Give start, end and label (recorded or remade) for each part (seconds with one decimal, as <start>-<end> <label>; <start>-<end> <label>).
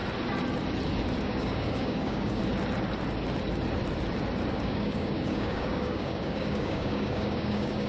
0.0-1.2 recorded; 1.2-2.4 remade; 2.4-4.5 recorded; 4.5-7.9 remade